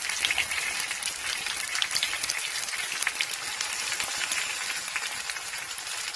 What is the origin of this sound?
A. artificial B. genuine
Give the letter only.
B